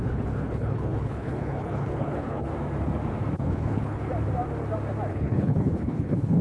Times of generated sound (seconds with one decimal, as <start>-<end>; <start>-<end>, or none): 0.0-2.5; 3.4-4.0; 5.1-6.4